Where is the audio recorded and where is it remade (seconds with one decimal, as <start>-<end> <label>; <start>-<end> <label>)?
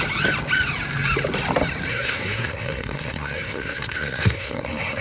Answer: 0.0-1.9 recorded; 1.9-5.0 remade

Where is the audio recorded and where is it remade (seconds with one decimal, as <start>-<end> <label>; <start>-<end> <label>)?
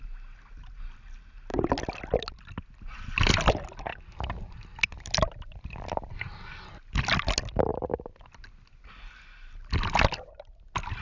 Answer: 0.0-11.0 recorded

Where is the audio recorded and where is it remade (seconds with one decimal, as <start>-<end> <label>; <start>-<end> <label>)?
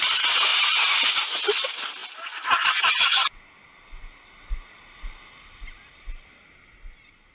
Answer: 0.0-0.5 recorded; 0.5-1.2 remade; 1.2-7.3 recorded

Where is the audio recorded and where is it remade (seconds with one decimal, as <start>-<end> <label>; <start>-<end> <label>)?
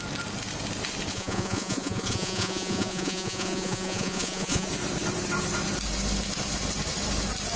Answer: 0.0-1.1 recorded; 1.1-4.7 remade; 4.7-7.6 recorded